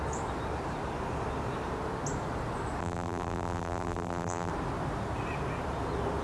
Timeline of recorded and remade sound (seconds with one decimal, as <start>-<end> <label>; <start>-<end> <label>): 0.0-2.8 recorded; 2.8-4.5 remade; 4.5-6.2 recorded